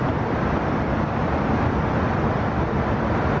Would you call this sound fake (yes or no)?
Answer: no